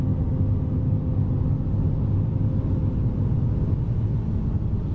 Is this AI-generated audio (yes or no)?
no